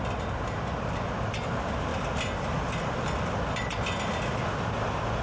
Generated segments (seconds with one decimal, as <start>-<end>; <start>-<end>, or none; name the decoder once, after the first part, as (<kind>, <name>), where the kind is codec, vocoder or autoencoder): none